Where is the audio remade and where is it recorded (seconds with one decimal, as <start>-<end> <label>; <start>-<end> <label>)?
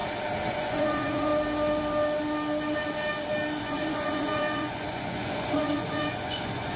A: 0.0-0.5 recorded; 0.5-1.3 remade; 1.3-3.6 recorded; 3.6-6.8 remade